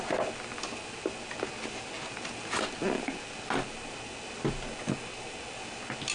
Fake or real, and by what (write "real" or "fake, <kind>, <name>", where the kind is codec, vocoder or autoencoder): real